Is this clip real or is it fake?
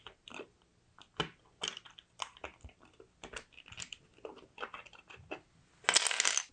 real